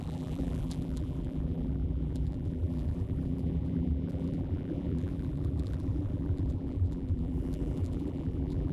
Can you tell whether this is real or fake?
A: fake